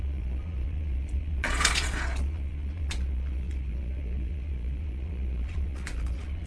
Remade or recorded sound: remade